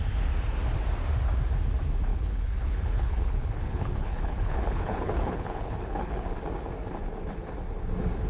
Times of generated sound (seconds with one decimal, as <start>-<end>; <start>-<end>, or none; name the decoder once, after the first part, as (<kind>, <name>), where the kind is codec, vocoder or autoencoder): 2.1-6.3 (codec, HILCodec)